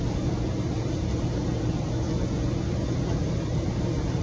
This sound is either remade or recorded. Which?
recorded